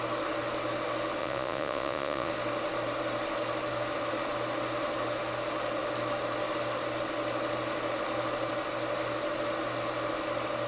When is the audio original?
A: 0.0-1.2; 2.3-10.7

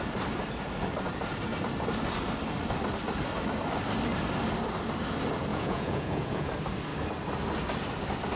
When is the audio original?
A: 0.0-5.5; 6.5-8.4

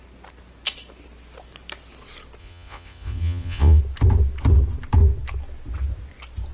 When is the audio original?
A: 0.0-2.4; 3.8-6.5

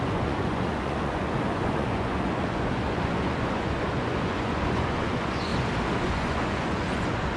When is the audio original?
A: 5.5-6.0

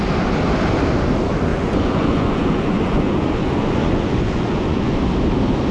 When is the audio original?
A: 0.0-1.5; 4.9-5.7